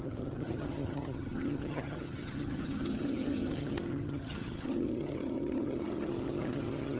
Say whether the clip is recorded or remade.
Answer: remade